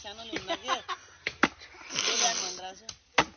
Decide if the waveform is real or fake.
real